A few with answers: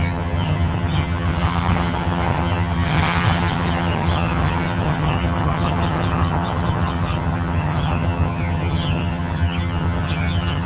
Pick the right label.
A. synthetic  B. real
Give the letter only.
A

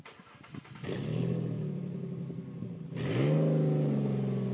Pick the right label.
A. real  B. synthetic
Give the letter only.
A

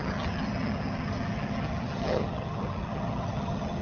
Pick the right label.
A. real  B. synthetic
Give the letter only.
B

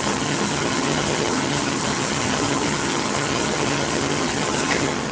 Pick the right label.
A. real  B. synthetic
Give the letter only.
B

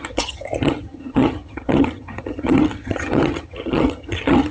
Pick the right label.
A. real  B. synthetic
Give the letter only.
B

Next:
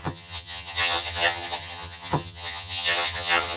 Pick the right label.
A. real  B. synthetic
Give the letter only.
B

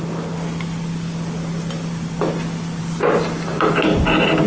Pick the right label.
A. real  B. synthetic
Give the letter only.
A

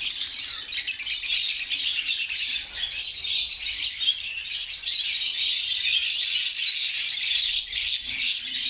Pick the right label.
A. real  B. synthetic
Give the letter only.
A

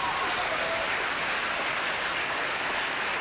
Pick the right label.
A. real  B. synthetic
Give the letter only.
A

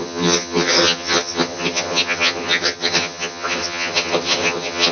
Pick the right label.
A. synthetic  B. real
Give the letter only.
A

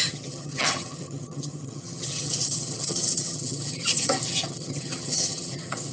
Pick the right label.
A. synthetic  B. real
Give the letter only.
A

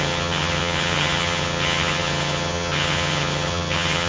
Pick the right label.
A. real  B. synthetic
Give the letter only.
B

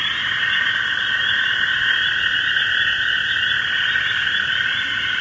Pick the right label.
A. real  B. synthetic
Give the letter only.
A